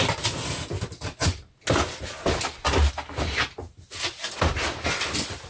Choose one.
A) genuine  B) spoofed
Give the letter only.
A